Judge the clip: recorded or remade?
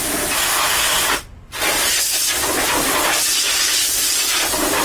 recorded